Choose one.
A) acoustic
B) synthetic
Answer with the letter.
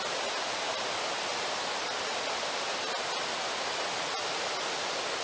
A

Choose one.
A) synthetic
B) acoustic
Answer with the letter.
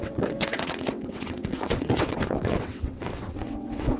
A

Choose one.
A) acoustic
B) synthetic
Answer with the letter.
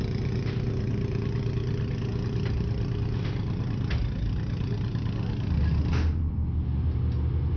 A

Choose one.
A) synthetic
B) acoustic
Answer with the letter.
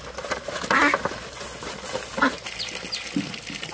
B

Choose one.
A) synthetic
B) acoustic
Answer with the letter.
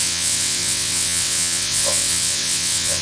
A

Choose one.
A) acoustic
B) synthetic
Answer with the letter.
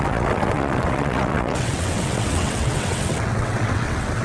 B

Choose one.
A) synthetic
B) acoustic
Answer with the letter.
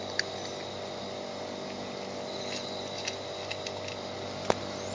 B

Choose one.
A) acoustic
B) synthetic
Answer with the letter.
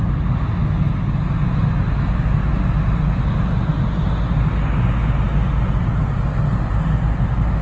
A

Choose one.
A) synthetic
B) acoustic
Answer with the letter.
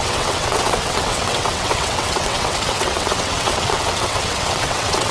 A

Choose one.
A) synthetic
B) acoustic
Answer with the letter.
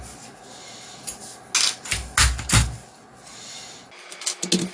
B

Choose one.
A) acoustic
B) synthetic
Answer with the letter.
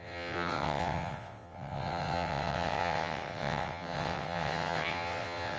B